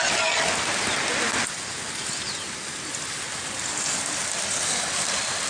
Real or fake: real